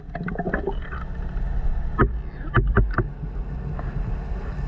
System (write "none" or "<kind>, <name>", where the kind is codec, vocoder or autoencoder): none